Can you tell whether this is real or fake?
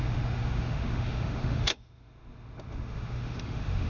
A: fake